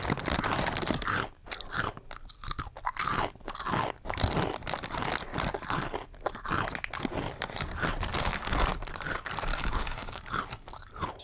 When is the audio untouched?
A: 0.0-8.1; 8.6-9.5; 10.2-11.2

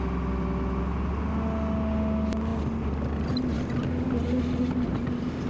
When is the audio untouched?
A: 0.0-5.5

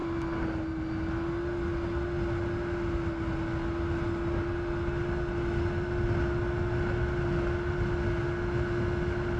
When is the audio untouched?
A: 0.0-9.4

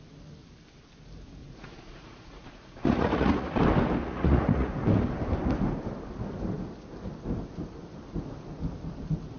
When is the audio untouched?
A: 0.0-1.4; 3.6-4.0; 4.7-9.4

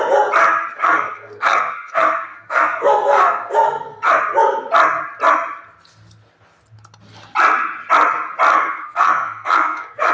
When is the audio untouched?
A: 0.0-0.8; 4.1-8.5